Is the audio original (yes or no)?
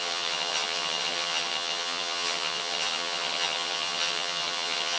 no